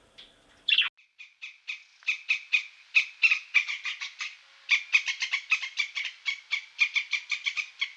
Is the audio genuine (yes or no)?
yes